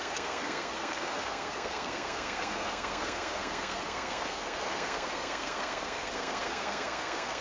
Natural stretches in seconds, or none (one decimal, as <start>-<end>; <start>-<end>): none